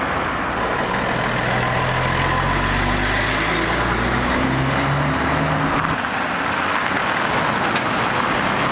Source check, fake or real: real